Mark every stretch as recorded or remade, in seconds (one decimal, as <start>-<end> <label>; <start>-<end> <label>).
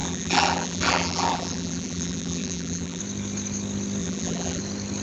0.0-3.0 remade; 3.0-4.0 recorded; 4.0-4.6 remade; 4.6-5.0 recorded